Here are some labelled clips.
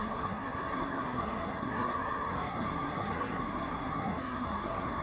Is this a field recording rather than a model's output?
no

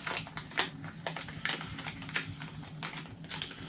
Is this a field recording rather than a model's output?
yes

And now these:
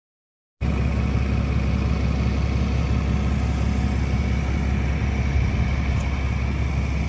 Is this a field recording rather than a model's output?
yes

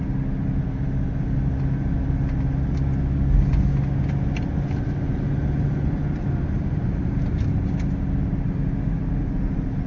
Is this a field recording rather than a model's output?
yes